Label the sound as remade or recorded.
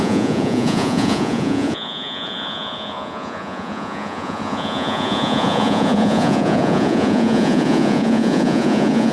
remade